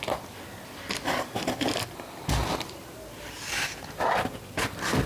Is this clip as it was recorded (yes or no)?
no